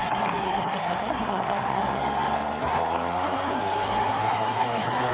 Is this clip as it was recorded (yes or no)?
no